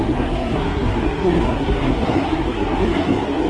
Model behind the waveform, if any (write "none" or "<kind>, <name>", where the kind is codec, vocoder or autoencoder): codec, SNAC